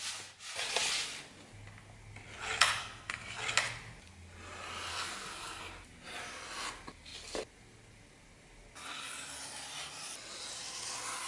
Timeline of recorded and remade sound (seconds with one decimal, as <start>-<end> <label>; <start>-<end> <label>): 0.0-2.8 recorded; 2.8-3.4 remade; 3.4-4.9 recorded; 4.9-5.7 remade; 5.7-11.3 recorded